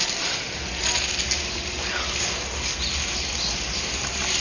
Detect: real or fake real